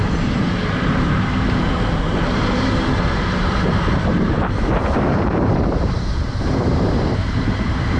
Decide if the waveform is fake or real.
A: fake